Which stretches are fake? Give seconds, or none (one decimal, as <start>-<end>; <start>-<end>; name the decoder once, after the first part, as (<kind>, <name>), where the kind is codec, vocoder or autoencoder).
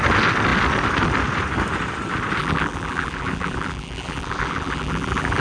2.4-5.4 (vocoder, BigVGAN v2)